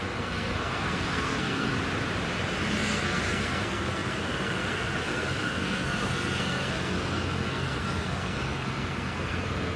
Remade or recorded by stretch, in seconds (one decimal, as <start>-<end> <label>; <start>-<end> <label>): 0.0-1.7 remade; 1.7-2.7 recorded; 2.7-9.8 remade

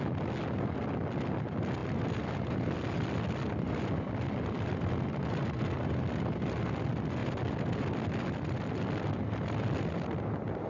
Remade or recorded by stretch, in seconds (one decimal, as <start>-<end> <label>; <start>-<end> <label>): 0.0-1.8 recorded; 1.8-6.1 remade; 6.1-7.2 recorded; 7.2-8.8 remade; 8.8-10.7 recorded